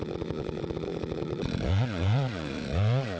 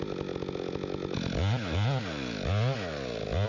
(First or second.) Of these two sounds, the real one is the second